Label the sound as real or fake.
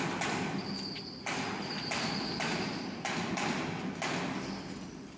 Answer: real